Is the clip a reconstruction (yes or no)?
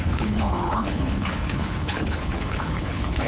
yes